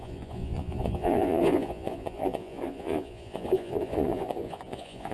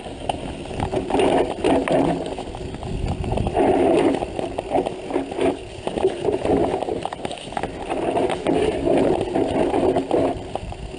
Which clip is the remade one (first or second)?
first